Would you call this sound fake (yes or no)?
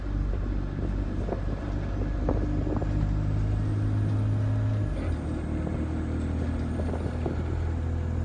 no